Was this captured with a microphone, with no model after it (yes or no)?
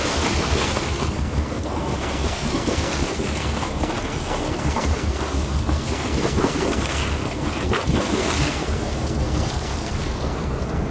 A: no